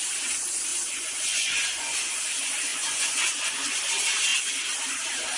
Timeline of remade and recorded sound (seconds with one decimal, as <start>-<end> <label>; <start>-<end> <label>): 0.0-0.7 recorded; 0.7-2.1 remade; 2.1-2.7 recorded; 2.7-3.8 remade; 3.8-5.4 recorded